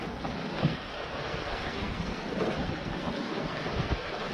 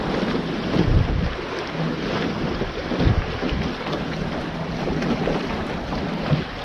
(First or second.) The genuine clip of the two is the second